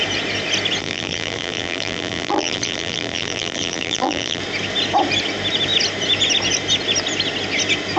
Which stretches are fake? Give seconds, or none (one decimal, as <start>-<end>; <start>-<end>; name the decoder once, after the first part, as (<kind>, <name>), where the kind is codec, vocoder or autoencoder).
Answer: 0.8-4.4 (vocoder, BigVGAN v2)